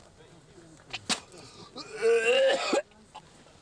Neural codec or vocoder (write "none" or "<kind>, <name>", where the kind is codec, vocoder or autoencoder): none